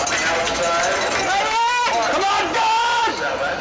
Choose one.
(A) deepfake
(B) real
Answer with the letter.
B